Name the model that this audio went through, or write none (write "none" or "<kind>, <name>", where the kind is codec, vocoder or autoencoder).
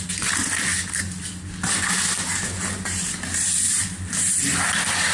none